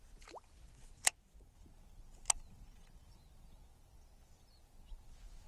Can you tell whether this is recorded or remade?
recorded